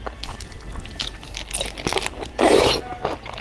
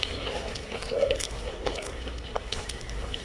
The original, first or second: first